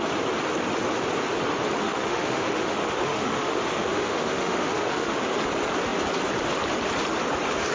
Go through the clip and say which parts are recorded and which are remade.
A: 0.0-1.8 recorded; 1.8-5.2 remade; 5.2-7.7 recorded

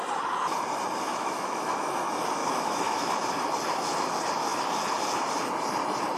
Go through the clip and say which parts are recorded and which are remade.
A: 0.0-1.1 recorded; 1.1-1.9 remade; 1.9-2.4 recorded; 2.4-3.1 remade; 3.1-6.2 recorded